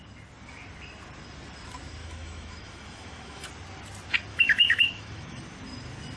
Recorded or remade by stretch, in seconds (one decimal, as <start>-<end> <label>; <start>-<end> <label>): 0.0-2.0 recorded; 2.0-3.5 remade; 3.5-4.3 recorded; 4.3-5.4 remade; 5.4-6.2 recorded